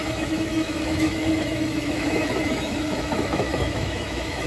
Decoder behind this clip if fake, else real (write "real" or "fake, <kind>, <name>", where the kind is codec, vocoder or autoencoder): fake, autoencoder, DAC-VAE